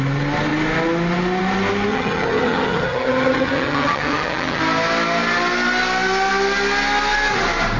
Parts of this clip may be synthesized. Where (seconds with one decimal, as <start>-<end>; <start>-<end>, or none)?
1.9-4.6